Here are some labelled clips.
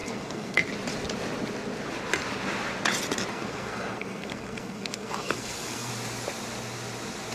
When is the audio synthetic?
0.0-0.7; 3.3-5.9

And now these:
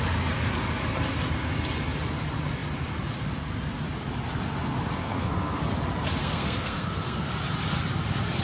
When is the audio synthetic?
5.0-5.6; 6.2-7.3

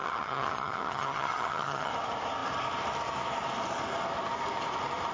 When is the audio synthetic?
0.0-1.9

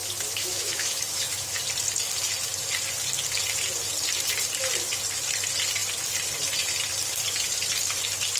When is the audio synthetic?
0.0-1.6

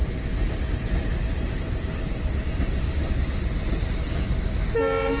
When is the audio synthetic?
0.0-3.1

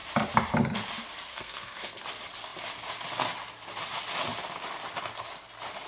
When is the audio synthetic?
1.3-2.0

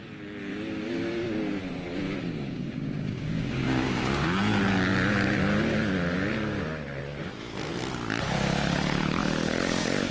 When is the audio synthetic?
2.2-4.4